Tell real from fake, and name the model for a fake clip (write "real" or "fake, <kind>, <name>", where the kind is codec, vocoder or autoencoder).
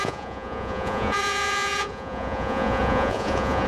fake, vocoder, Vocos